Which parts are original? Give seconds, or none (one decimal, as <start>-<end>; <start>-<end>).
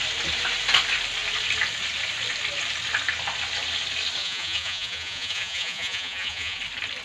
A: 0.0-4.2; 6.6-7.0